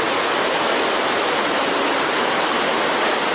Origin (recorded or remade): recorded